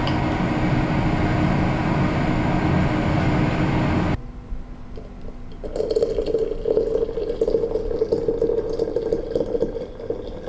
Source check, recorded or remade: recorded